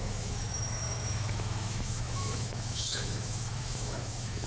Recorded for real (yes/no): no